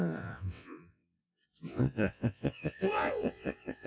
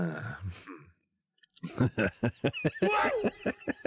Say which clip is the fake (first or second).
first